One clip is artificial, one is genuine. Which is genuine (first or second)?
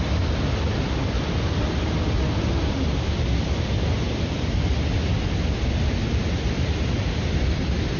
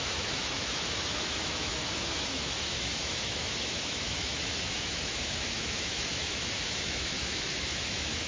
first